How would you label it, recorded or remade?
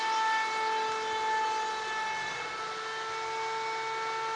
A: recorded